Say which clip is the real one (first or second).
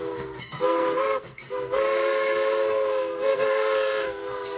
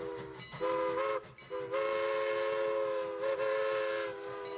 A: second